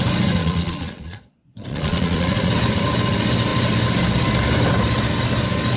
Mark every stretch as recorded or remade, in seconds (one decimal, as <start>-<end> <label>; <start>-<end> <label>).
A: 0.0-0.4 recorded; 0.4-2.5 remade; 2.5-5.8 recorded